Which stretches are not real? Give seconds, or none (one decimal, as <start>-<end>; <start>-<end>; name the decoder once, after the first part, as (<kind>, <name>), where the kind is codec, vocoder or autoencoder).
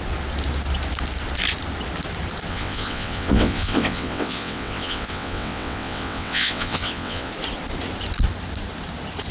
2.5-7.3 (vocoder, WaveNeXt)